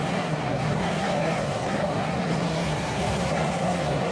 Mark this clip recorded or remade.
remade